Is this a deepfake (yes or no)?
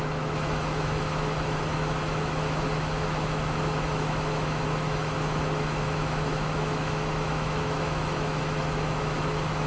yes